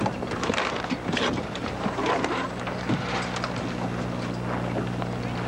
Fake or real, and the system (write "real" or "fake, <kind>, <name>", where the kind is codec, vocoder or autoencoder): real